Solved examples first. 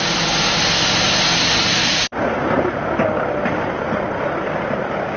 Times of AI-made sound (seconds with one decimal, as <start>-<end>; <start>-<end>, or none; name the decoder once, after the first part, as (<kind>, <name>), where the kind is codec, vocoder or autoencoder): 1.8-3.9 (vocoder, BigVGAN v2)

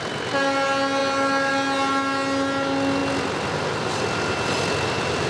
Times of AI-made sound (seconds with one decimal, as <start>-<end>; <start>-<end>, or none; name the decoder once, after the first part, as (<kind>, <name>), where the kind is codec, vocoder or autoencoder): none

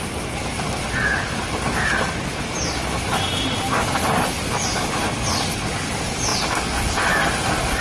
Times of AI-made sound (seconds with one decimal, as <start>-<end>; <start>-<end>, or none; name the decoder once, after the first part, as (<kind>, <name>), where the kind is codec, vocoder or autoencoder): 1.1-2.9 (vocoder, BigVGAN v2)

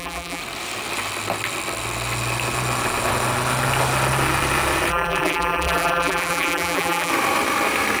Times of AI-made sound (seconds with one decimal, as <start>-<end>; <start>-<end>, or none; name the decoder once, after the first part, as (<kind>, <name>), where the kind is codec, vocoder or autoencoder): 0.0-0.4 (vocoder, BigVGAN v2); 4.9-7.1

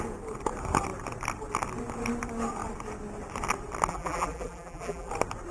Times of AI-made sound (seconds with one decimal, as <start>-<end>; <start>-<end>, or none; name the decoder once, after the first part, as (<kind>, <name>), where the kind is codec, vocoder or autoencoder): 3.9-5.1 (vocoder, BigVGAN v2)

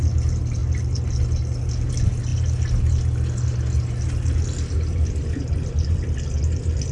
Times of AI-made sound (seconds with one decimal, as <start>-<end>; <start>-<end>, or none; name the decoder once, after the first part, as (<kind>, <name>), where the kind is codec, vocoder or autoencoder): none